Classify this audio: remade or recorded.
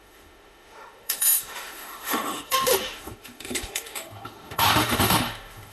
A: remade